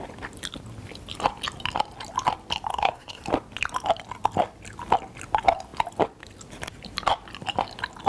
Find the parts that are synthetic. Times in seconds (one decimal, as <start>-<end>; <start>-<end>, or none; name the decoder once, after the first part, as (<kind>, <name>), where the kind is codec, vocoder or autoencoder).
2.7-3.2 (codec, SNAC)